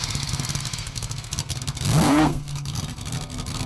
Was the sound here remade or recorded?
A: remade